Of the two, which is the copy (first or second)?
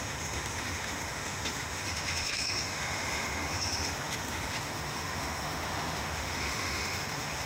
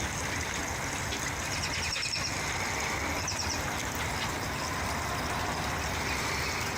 first